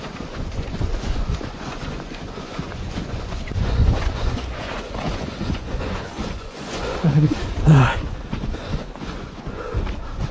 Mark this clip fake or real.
fake